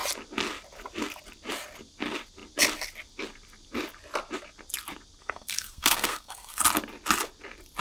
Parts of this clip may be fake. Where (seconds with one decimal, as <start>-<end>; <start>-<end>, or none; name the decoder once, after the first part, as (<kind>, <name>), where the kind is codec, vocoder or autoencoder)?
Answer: 5.2-6.6 (codec, SNAC)